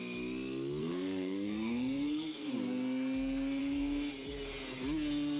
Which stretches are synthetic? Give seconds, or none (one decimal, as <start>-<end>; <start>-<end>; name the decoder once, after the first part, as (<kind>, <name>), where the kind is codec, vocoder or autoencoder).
0.8-2.5 (codec, SNAC); 3.6-4.1

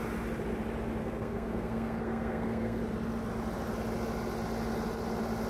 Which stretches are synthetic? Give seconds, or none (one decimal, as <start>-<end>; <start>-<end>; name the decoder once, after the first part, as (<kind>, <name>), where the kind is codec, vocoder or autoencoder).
1.0-2.8 (codec, SNAC)